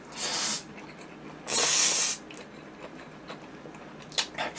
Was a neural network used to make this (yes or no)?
no